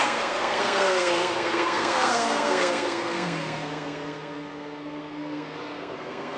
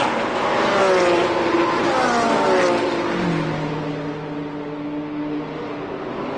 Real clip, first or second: second